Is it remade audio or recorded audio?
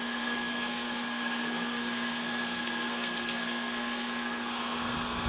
remade